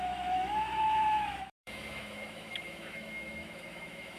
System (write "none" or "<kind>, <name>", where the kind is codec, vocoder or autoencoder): autoencoder, DAC-VAE